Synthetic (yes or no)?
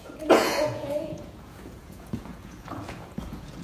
yes